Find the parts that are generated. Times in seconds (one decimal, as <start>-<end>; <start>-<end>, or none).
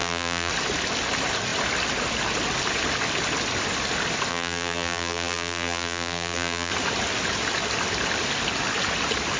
0.0-0.5; 4.3-6.7